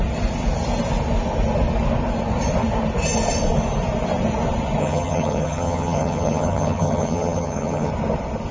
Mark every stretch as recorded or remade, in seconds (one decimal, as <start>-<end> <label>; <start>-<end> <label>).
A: 0.0-4.8 recorded; 4.8-7.9 remade; 7.9-8.5 recorded